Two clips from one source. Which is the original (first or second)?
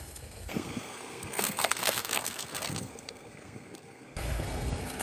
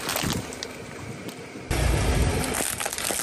second